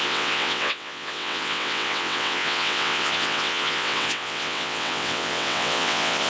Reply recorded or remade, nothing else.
remade